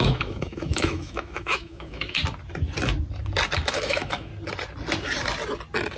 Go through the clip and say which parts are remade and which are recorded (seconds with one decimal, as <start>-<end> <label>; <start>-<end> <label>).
0.0-2.2 remade; 2.2-3.7 recorded; 3.7-4.3 remade; 4.3-6.0 recorded

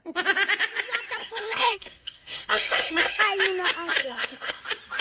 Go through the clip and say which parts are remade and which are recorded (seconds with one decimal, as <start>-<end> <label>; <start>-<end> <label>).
0.0-1.2 recorded; 1.2-3.2 remade; 3.2-4.0 recorded; 4.0-4.6 remade; 4.6-5.0 recorded

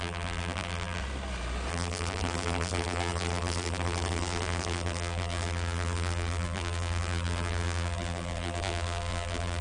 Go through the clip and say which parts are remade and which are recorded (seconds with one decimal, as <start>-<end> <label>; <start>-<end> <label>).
0.0-1.0 remade; 1.0-1.7 recorded; 1.7-9.6 remade

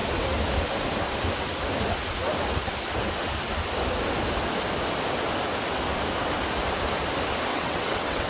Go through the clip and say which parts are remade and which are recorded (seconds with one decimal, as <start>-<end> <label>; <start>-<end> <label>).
0.0-7.5 recorded; 7.5-8.3 remade